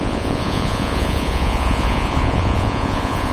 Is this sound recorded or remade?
remade